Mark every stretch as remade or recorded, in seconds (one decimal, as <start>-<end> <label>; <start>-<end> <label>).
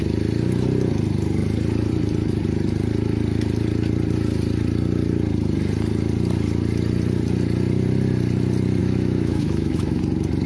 0.0-8.8 recorded; 8.8-10.0 remade; 10.0-10.5 recorded